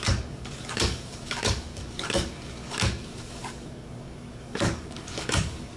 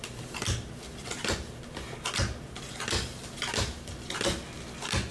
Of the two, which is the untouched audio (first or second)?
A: second